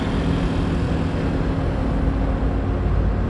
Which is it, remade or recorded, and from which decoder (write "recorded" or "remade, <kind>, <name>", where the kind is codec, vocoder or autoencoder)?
recorded